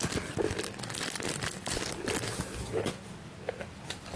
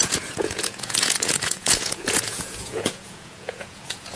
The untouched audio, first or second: first